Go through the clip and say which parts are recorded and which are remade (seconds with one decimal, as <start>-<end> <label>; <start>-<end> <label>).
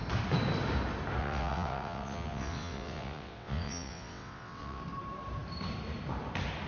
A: 0.0-1.2 recorded; 1.2-4.8 remade; 4.8-6.7 recorded